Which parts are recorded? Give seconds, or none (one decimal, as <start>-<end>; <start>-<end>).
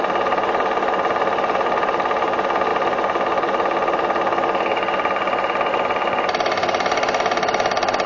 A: 0.0-8.1